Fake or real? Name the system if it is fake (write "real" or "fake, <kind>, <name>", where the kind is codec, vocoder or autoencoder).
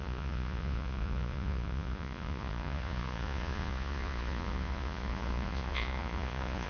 fake, vocoder, Vocos